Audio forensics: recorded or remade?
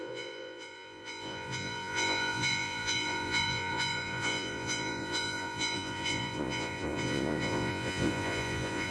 remade